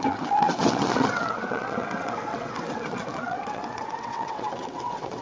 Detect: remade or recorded remade